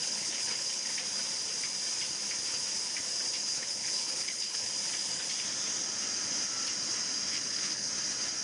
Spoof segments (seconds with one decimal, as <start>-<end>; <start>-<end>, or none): 0.0-0.9; 3.4-4.7; 7.3-7.9

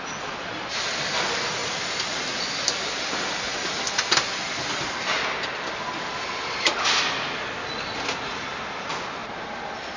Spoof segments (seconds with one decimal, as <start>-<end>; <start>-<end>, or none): none